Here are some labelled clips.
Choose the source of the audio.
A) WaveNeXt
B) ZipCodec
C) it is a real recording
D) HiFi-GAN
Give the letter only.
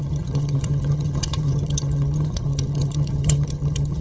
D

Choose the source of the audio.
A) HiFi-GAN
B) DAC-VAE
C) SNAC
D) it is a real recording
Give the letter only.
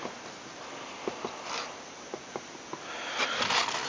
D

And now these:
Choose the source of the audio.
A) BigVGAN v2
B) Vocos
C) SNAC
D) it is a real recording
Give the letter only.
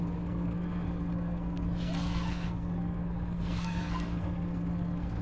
C